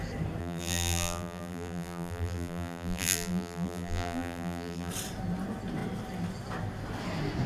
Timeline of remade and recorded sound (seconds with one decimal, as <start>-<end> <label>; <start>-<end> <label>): 0.0-0.4 recorded; 0.4-4.9 remade; 4.9-7.5 recorded